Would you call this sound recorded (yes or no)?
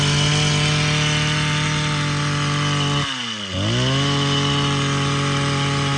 yes